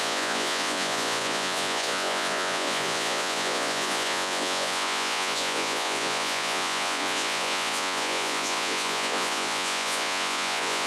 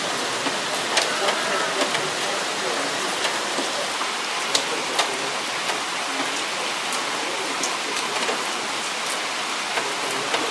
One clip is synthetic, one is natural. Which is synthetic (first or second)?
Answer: first